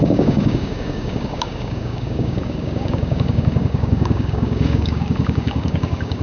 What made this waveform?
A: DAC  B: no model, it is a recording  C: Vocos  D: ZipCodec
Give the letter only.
A